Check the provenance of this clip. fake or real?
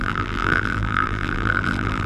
fake